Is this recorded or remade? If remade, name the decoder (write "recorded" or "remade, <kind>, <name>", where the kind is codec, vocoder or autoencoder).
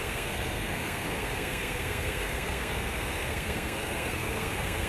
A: remade, codec, SNAC